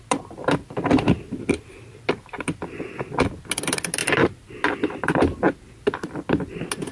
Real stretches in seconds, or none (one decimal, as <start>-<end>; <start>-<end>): 0.0-6.9

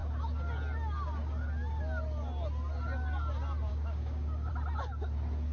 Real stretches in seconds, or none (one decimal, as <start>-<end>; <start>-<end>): 0.0-3.7; 4.5-5.5

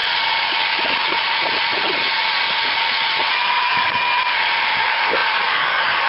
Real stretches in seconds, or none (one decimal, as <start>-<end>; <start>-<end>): 0.0-3.6; 4.1-4.8

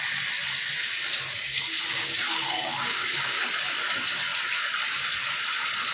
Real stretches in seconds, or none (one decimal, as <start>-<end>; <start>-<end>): 0.0-1.3; 3.7-5.9

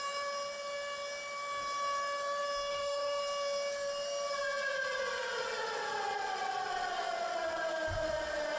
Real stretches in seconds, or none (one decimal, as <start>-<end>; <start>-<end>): 0.0-2.7; 3.2-8.6

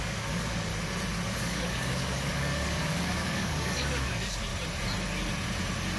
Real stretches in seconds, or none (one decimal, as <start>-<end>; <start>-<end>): 0.7-1.4; 4.5-6.0

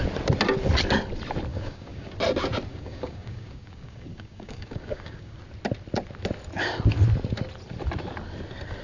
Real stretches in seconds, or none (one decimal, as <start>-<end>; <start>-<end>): 0.0-1.5; 2.1-2.7; 5.4-8.8

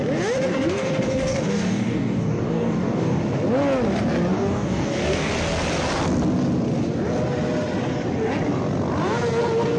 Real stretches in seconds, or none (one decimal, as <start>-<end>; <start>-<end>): 0.0-0.5; 3.2-4.3; 5.3-9.8